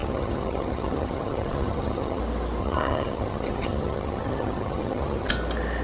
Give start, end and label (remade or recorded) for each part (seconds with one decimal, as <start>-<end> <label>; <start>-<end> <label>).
0.0-2.2 remade; 2.2-2.6 recorded; 2.6-5.3 remade; 5.3-5.8 recorded